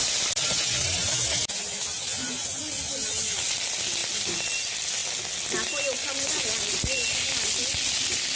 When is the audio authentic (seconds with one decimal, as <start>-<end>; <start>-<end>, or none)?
0.0-8.4